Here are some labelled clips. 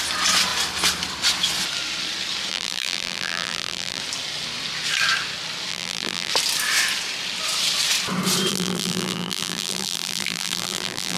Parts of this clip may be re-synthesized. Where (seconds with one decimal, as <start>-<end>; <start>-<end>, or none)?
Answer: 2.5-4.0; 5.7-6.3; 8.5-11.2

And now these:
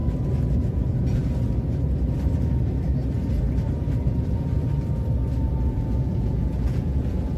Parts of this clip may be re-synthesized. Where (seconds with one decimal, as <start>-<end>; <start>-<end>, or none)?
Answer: 0.7-1.2; 5.6-7.4

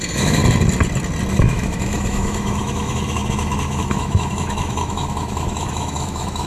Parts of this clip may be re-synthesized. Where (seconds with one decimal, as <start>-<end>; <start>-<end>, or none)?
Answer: 0.0-0.4; 1.3-6.5

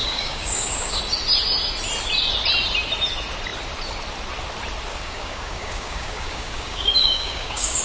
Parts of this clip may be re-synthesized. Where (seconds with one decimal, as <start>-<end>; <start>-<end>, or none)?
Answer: 0.0-1.0; 4.9-7.8

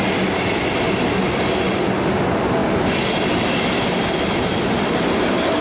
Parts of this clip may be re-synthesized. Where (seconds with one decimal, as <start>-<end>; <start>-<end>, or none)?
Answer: none

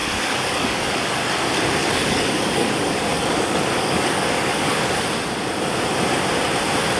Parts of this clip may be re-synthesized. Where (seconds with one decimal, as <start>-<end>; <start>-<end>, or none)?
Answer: 0.0-1.3; 1.8-5.0

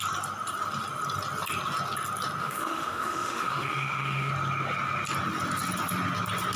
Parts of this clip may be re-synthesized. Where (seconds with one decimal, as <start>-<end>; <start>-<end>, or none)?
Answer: 2.4-4.3

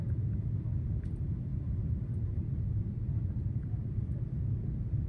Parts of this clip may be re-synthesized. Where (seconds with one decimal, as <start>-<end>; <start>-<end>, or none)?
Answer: 1.5-4.4